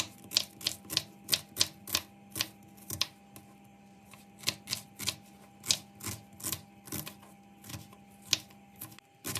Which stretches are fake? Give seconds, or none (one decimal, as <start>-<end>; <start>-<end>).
3.7-4.2